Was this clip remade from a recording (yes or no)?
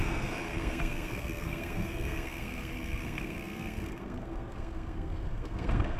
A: yes